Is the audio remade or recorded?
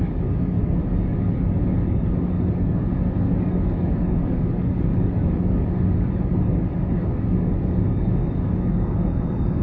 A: remade